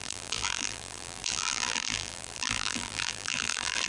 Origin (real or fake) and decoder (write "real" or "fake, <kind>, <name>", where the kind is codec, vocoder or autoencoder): fake, vocoder, BigVGAN v2